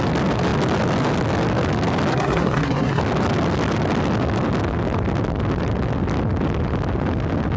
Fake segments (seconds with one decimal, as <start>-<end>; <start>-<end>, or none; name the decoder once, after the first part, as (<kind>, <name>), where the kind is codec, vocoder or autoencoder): 2.1-3.0 (codec, SNAC)